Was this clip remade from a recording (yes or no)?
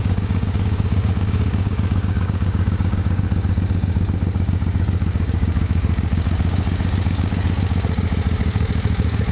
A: yes